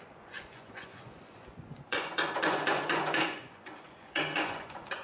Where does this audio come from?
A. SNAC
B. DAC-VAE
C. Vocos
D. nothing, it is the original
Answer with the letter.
C